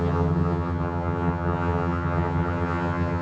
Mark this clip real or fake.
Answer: fake